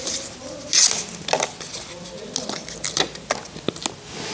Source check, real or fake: real